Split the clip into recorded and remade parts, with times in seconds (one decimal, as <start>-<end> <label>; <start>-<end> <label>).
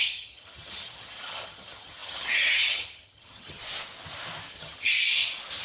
0.0-3.6 remade; 3.6-4.5 recorded; 4.5-4.9 remade; 4.9-5.6 recorded